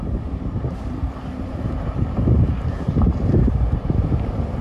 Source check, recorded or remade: remade